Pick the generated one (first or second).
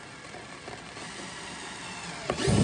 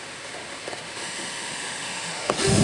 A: second